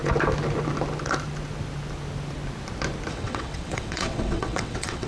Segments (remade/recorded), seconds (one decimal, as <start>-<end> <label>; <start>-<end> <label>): 0.0-3.1 recorded; 3.1-5.1 remade